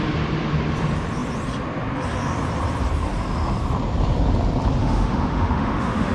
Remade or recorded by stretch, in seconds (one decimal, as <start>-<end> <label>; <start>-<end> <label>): 0.0-4.8 recorded; 4.8-6.1 remade